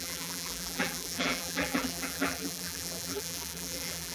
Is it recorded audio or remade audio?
remade